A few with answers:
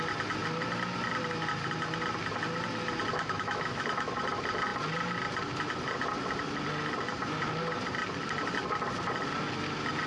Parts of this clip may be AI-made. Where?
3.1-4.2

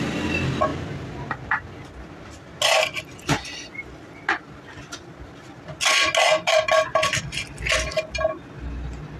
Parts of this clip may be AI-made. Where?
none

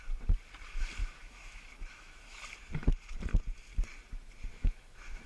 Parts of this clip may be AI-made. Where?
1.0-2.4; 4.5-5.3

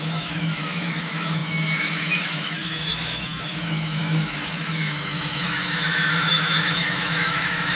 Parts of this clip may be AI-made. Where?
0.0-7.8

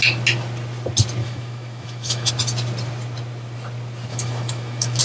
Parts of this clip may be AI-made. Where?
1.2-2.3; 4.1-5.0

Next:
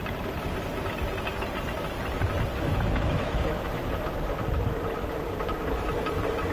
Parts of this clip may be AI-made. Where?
2.5-3.6

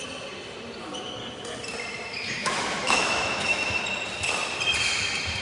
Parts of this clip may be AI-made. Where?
2.4-3.8

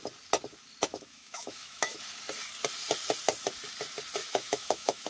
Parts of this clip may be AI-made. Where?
0.9-2.0; 4.2-5.1